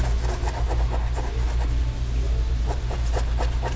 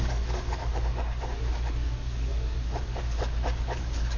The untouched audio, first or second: first